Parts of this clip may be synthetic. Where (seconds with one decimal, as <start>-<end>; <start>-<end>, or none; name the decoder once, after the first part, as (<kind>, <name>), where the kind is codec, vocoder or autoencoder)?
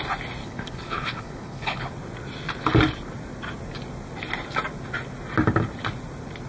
0.4-1.9 (codec, HILCodec)